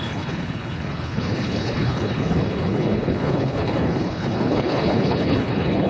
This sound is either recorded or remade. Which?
remade